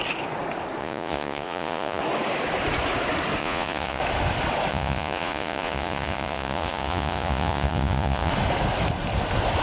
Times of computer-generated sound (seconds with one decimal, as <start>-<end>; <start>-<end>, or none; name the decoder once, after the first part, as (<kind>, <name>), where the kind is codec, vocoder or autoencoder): 0.8-2.0 (vocoder, Vocos); 3.4-4.0; 4.7-8.3